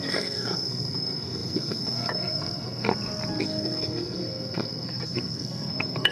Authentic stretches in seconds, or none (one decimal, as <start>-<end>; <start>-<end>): 2.9-3.4